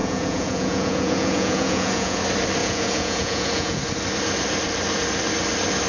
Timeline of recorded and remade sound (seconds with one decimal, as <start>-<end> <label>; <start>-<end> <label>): 0.0-2.2 remade; 2.2-2.6 recorded; 2.6-3.8 remade; 3.8-5.9 recorded